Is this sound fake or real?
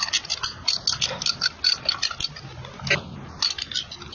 real